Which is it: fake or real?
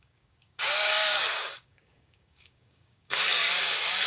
fake